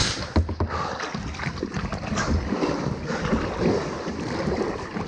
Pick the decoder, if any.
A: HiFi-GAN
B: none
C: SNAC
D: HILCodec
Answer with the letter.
B